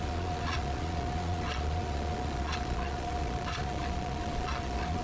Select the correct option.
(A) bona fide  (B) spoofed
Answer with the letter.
B